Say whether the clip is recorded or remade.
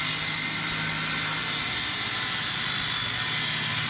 recorded